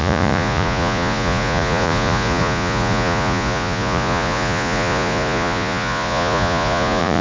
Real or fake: fake